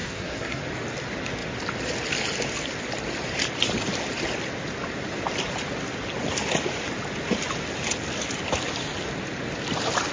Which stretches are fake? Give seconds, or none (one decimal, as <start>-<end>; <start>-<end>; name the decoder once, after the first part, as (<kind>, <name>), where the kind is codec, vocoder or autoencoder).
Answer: 0.0-0.6 (codec, SNAC)